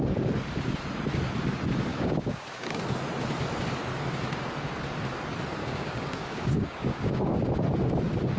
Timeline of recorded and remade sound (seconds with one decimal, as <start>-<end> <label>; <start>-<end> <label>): 0.0-1.9 recorded; 1.9-2.8 remade; 2.8-5.6 recorded; 5.6-7.4 remade; 7.4-8.4 recorded